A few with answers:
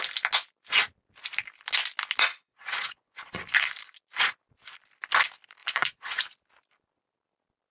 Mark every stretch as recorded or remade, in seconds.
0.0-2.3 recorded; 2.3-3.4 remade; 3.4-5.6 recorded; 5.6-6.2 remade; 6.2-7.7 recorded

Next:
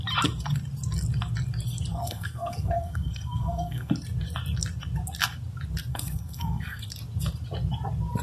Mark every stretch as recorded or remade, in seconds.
0.0-1.9 recorded; 1.9-3.9 remade; 3.9-5.9 recorded; 5.9-6.8 remade; 6.8-8.2 recorded

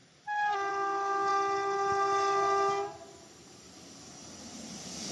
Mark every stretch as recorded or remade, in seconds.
0.0-5.1 recorded